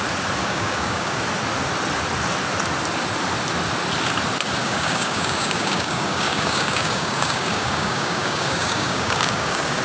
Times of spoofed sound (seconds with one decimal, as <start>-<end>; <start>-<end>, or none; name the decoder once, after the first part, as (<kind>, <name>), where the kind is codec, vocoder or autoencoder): 0.4-1.2 (codec, DAC); 4.6-9.8